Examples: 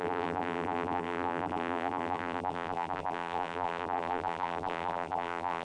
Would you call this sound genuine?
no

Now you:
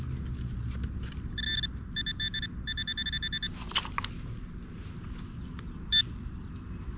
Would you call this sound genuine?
yes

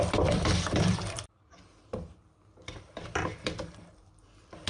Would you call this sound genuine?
no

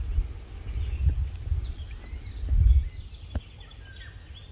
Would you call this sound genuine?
yes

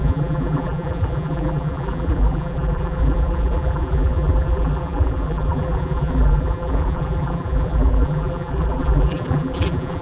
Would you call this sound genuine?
no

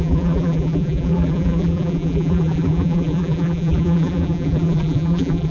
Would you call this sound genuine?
no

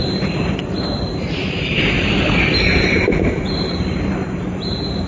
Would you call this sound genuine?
no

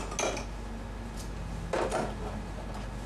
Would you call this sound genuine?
yes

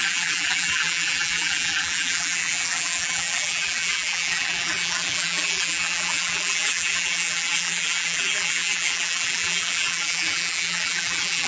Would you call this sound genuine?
no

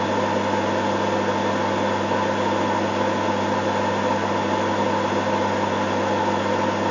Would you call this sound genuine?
yes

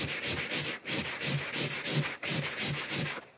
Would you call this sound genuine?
no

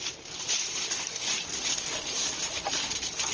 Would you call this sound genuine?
no